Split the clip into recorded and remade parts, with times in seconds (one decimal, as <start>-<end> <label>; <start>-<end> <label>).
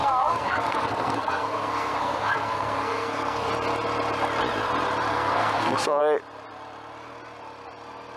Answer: 0.0-3.5 remade; 3.5-5.1 recorded; 5.1-6.0 remade; 6.0-8.2 recorded